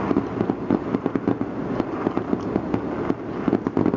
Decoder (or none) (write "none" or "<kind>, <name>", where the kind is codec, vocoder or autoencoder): none